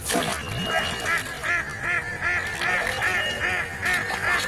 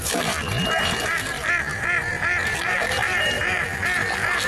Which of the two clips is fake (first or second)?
second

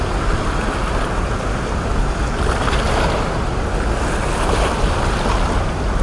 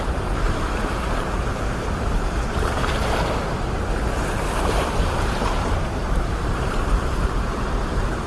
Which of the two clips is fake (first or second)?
second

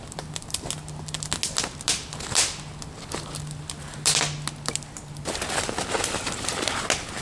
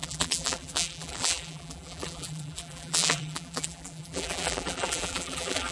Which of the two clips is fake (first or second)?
second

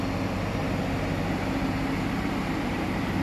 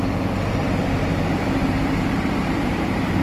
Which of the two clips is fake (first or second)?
second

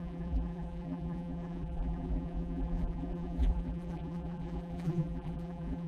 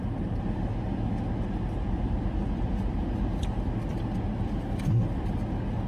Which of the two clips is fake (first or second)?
first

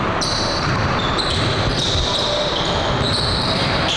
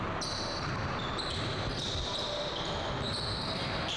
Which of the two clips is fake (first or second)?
first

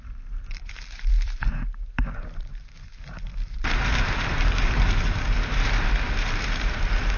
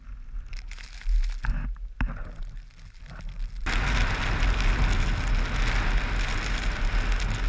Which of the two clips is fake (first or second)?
first